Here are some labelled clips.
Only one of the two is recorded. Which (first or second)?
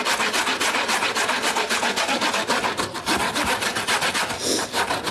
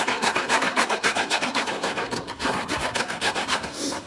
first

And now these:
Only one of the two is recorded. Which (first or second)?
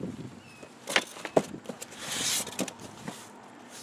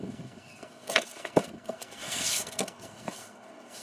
first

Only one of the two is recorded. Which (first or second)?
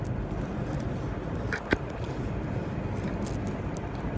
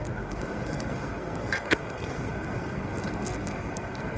first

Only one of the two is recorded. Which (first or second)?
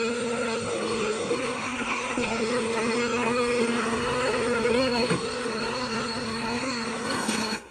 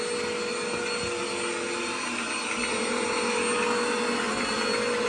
second